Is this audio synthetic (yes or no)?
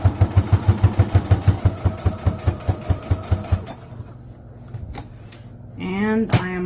no